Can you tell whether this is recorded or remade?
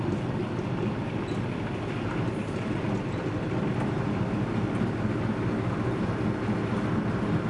recorded